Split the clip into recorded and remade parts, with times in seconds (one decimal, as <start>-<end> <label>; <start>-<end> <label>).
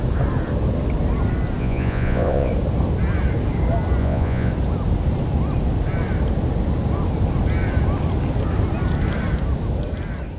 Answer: 0.0-1.6 recorded; 1.6-2.5 remade; 2.5-4.0 recorded; 4.0-4.5 remade; 4.5-10.4 recorded